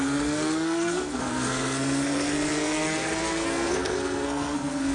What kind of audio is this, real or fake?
fake